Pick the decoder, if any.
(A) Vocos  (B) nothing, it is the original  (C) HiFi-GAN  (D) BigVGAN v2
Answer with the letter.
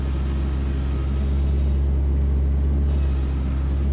B